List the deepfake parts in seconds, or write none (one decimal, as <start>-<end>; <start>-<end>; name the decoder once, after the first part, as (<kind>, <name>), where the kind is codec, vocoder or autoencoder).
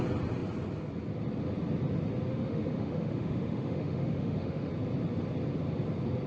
2.3-4.7 (autoencoder, DAC-VAE)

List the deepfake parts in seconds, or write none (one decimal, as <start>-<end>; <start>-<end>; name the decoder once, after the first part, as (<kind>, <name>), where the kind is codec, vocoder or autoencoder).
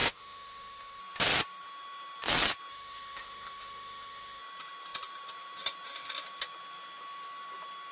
0.0-1.0 (autoencoder, DAC-VAE); 2.7-4.4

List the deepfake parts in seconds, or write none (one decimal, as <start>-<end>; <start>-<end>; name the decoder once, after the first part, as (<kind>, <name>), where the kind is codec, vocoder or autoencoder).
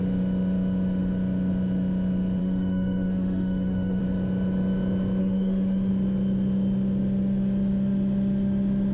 2.4-4.0 (autoencoder, DAC-VAE); 5.2-5.9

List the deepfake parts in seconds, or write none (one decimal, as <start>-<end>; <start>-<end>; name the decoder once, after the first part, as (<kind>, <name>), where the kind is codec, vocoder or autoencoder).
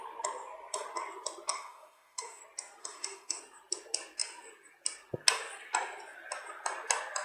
1.5-2.4 (autoencoder, DAC-VAE); 2.8-3.4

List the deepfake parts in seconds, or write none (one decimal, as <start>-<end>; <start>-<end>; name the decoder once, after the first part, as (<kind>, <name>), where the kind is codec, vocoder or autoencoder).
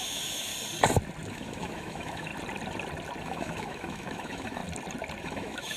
0.0-0.5 (autoencoder, DAC-VAE); 1.3-2.3; 3.2-4.6; 5.2-5.8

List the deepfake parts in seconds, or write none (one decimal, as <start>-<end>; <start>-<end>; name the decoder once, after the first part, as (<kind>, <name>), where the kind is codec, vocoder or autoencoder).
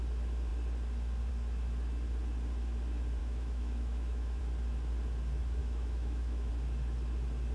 3.2-4.4 (autoencoder, DAC-VAE); 5.6-6.5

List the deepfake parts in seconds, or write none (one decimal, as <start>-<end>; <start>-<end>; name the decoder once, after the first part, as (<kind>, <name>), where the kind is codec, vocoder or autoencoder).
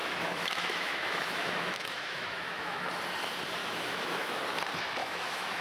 0.0-2.9 (autoencoder, DAC-VAE); 3.6-4.4; 5.0-5.6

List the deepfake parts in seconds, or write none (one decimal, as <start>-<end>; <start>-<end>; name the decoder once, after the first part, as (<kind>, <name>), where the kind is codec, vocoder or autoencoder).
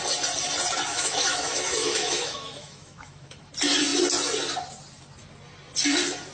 0.9-3.5 (autoencoder, DAC-VAE)